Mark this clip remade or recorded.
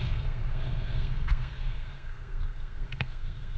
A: remade